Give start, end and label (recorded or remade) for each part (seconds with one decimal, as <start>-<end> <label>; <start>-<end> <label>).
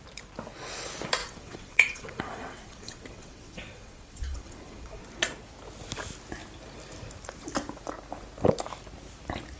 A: 0.0-1.2 recorded; 1.2-5.0 remade; 5.0-9.6 recorded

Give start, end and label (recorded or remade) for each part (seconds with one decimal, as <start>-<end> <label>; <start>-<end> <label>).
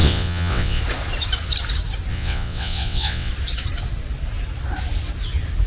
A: 0.0-0.8 remade; 0.8-2.1 recorded; 2.1-3.3 remade; 3.3-5.7 recorded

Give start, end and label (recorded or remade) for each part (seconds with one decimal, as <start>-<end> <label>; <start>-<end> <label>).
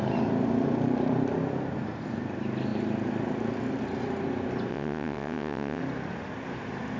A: 0.0-4.7 recorded; 4.7-5.8 remade; 5.8-7.0 recorded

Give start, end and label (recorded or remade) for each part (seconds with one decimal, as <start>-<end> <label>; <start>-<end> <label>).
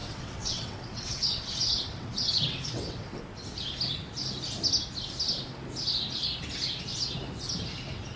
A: 0.0-3.2 remade; 3.2-8.2 recorded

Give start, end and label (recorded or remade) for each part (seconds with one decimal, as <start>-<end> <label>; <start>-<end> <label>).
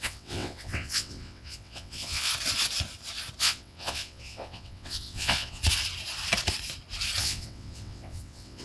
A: 0.0-2.3 remade; 2.3-3.4 recorded; 3.4-5.6 remade; 5.6-7.2 recorded; 7.2-8.6 remade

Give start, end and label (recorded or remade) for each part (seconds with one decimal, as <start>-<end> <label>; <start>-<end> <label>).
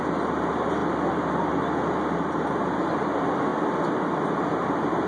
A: 0.0-5.1 recorded